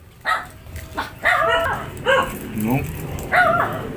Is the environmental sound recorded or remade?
recorded